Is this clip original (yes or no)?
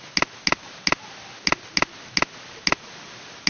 yes